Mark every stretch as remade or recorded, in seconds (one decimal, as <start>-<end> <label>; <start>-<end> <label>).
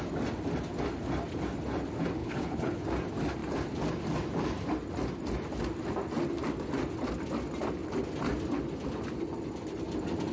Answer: 0.0-2.2 recorded; 2.2-2.8 remade; 2.8-10.3 recorded